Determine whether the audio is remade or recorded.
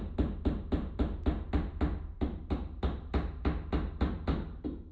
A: remade